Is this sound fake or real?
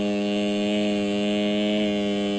real